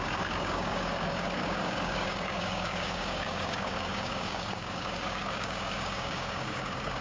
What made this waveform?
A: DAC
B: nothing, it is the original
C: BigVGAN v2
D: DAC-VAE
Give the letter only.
A